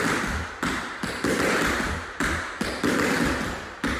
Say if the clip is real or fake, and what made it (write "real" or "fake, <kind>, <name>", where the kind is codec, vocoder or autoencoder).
real